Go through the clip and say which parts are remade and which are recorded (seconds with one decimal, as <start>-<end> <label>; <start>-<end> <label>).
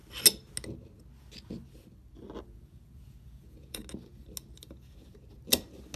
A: 0.0-2.4 recorded; 2.4-3.8 remade; 3.8-6.0 recorded